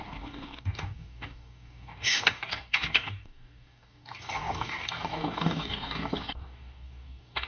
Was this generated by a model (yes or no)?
yes